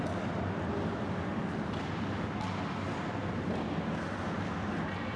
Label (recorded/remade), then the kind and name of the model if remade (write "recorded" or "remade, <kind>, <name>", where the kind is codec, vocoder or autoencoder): recorded